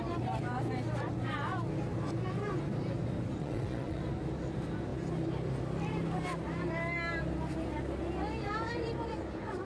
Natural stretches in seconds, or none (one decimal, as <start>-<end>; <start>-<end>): 0.0-3.4; 4.0-9.6